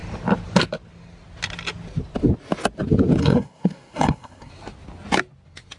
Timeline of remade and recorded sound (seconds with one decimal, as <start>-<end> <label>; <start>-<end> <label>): 0.0-3.2 recorded; 3.2-4.5 remade; 4.5-5.8 recorded